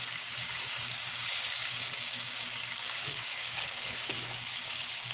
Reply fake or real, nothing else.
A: fake